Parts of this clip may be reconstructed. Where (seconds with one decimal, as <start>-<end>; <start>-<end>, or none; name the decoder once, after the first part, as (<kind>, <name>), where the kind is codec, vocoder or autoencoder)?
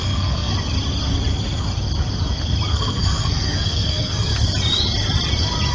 0.0-0.5 (codec, SNAC); 2.7-4.3